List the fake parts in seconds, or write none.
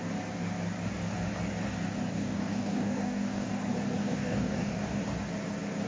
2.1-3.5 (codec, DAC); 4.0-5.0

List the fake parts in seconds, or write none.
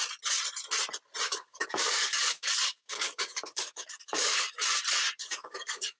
1.3-4.5 (codec, DAC); 5.2-6.0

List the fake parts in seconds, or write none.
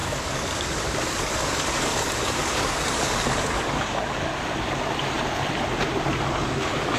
0.0-4.3 (codec, DAC); 6.2-7.0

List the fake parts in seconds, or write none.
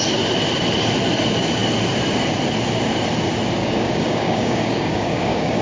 3.6-5.6 (codec, DAC)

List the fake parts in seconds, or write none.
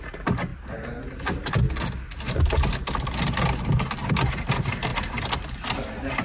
none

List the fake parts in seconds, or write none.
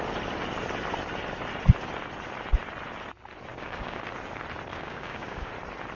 3.5-4.0 (codec, DAC); 4.7-5.5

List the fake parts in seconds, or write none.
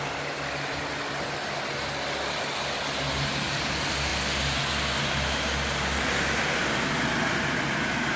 none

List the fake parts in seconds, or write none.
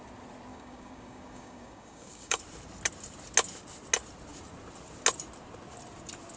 0.5-2.4 (codec, DAC)